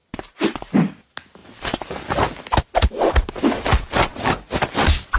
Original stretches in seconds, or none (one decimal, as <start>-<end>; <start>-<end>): 0.0-5.2